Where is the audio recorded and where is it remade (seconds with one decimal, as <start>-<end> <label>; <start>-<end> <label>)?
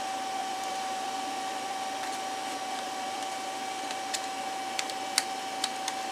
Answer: 0.0-0.4 recorded; 0.4-4.1 remade; 4.1-6.1 recorded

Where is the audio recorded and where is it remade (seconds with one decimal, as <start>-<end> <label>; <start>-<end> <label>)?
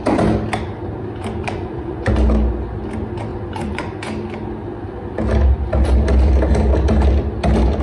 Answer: 0.0-1.4 recorded; 1.4-2.1 remade; 2.1-3.3 recorded; 3.3-3.8 remade; 3.8-7.8 recorded